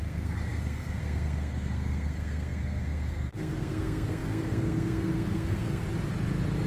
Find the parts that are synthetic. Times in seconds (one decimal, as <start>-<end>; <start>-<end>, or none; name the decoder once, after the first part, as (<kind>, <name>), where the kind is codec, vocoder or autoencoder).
0.0-5.8 (codec, SNAC)